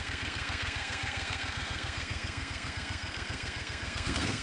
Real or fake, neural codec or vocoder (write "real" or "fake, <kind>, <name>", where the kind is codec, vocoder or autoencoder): fake, codec, SNAC